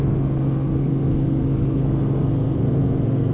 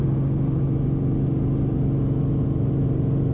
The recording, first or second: second